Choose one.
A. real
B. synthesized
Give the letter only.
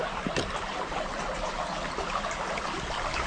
A